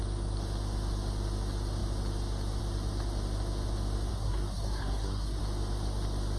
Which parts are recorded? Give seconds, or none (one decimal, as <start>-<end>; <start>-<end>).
0.0-4.1; 5.4-6.4